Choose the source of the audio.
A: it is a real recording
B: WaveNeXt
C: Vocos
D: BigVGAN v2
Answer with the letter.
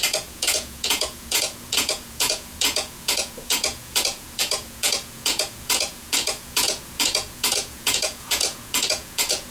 C